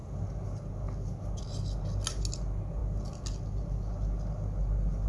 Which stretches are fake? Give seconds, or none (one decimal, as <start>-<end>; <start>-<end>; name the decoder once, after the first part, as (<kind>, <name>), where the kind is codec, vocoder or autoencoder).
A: none

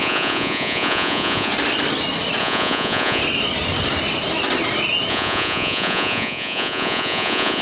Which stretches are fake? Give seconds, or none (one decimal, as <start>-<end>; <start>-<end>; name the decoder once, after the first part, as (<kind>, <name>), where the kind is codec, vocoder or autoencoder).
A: 0.0-1.5 (vocoder, Vocos); 2.4-3.2; 5.1-7.6

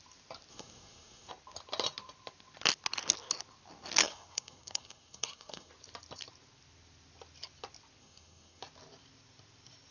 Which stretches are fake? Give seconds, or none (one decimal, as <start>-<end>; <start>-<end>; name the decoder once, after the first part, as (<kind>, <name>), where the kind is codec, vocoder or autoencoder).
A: 0.5-1.3 (codec, SNAC); 4.0-5.7; 8.0-8.6

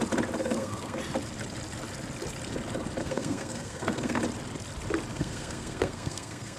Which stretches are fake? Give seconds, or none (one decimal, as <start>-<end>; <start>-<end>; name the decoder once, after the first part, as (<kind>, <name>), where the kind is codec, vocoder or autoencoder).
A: 0.4-1.0 (codec, SNAC); 3.0-4.2; 5.1-6.6

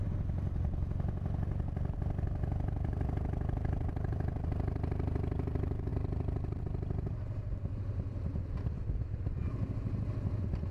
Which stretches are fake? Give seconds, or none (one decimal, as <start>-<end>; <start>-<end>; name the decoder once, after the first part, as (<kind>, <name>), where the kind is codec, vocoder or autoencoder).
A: none